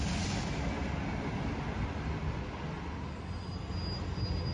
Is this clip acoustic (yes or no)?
yes